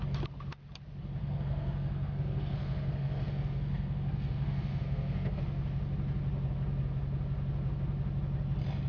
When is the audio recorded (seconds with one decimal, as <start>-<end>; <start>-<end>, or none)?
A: 0.0-1.2; 5.4-8.9